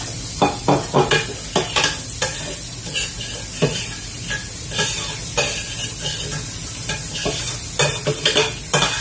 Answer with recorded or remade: recorded